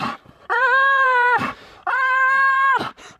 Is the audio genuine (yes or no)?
no